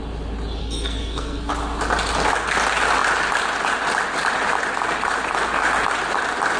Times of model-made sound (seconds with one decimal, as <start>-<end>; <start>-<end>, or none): 0.6-1.5